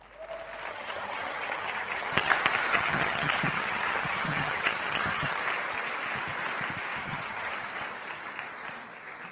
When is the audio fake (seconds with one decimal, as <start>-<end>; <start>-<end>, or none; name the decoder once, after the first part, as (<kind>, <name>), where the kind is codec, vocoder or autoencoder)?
0.7-2.3 (vocoder, HiFi-GAN); 2.7-5.4; 7.0-7.5